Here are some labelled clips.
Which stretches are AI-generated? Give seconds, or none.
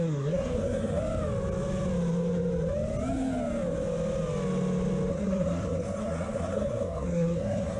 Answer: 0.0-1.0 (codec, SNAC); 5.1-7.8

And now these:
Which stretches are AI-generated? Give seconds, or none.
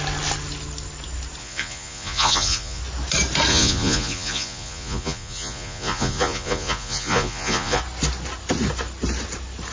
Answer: 1.4-2.8 (vocoder, Vocos); 3.5-7.8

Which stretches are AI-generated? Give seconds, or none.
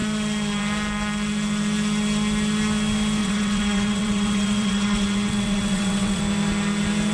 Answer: 3.2-6.2 (vocoder, WaveNeXt)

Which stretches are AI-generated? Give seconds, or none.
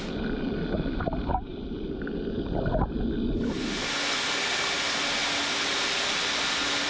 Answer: none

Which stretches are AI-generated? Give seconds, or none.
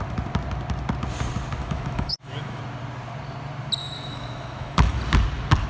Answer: 1.6-2.6 (autoencoder, DAC-VAE); 3.8-5.0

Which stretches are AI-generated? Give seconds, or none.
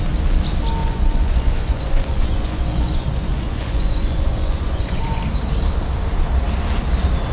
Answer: 0.8-5.2 (vocoder, Vocos)